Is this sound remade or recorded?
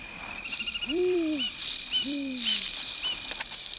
remade